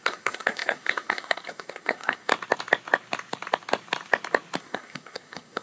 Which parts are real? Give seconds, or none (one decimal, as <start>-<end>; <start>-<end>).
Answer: 2.3-4.6

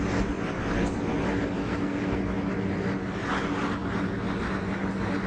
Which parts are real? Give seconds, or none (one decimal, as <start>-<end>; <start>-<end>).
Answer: 0.0-1.6; 2.2-5.3